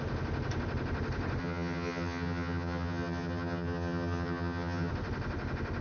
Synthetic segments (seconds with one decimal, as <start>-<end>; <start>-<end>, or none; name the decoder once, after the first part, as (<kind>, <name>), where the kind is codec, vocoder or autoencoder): 1.4-4.9 (vocoder, HiFi-GAN)